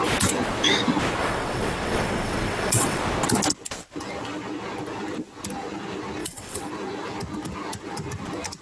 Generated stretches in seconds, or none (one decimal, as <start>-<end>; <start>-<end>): 1.2-3.0; 6.2-6.7